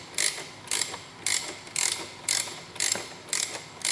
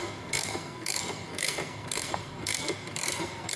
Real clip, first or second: first